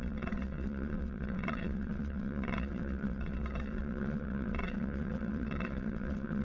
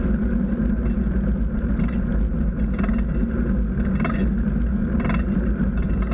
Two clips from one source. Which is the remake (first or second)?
first